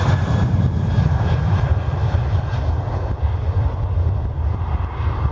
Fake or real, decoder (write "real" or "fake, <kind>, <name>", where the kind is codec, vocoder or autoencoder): real